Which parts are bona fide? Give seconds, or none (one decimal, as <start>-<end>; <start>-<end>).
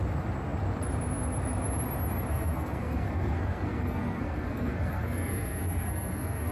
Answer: 0.0-2.3